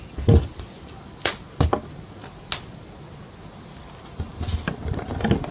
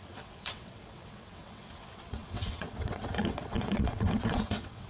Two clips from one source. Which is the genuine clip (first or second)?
first